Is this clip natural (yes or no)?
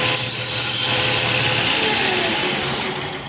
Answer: yes